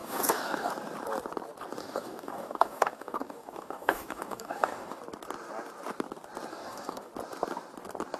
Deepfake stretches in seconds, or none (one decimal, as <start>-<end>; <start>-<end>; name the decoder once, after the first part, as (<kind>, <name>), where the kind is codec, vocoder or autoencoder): 0.0-0.7 (codec, DAC); 1.8-5.0; 6.5-7.1